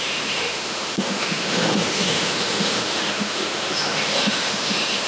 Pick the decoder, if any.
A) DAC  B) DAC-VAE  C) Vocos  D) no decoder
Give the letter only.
B